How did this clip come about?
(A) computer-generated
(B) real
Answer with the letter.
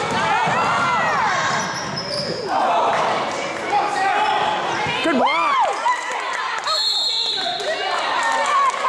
B